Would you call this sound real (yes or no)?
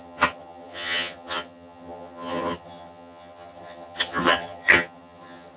no